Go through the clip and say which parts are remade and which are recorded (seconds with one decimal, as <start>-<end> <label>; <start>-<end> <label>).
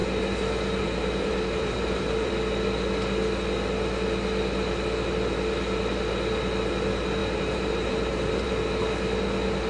0.0-2.3 remade; 2.3-7.2 recorded; 7.2-8.5 remade; 8.5-9.7 recorded